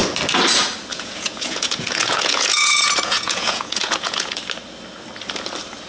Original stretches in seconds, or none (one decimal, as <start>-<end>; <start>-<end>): 0.0-0.9; 4.4-5.9